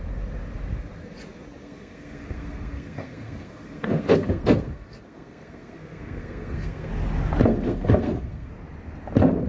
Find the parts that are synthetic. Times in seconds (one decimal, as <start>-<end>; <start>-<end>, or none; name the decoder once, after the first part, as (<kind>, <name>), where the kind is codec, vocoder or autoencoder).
1.6-6.9 (codec, SNAC); 7.5-8.5